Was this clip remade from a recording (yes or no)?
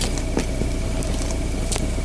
no